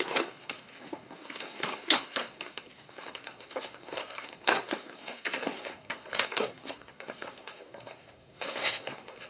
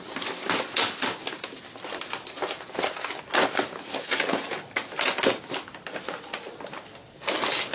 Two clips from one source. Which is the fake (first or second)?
first